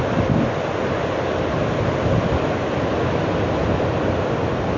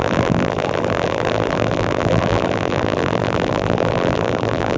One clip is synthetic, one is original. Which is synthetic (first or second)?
second